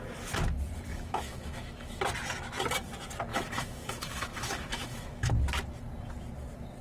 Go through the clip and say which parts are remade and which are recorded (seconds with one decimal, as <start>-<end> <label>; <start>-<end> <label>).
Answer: 0.0-0.9 recorded; 0.9-2.0 remade; 2.0-3.3 recorded; 3.3-5.3 remade; 5.3-6.8 recorded

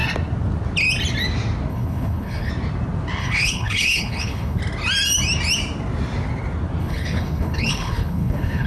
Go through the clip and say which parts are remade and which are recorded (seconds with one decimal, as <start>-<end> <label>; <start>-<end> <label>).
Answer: 0.0-1.7 recorded; 1.7-2.5 remade; 2.5-3.2 recorded; 3.2-4.6 remade; 4.6-6.8 recorded; 6.8-8.7 remade